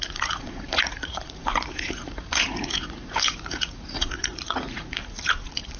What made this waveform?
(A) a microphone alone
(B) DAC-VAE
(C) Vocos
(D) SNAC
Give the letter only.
C